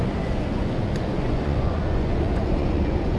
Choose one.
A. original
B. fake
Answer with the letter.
B